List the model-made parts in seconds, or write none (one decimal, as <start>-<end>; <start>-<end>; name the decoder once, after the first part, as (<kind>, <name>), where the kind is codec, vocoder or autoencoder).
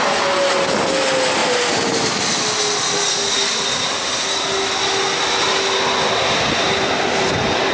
none